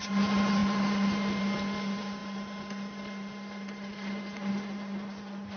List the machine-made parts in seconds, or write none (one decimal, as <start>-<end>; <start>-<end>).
none